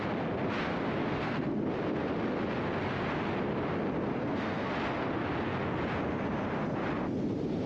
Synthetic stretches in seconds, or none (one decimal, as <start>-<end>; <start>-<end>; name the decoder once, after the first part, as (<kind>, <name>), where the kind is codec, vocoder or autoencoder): 1.0-1.6 (codec, SNAC); 4.1-4.7